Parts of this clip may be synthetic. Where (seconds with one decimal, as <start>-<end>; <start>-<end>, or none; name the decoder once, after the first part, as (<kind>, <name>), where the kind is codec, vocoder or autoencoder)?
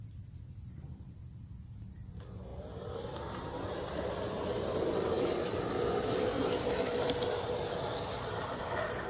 0.0-1.2 (vocoder, BigVGAN v2); 1.9-2.5; 3.0-9.1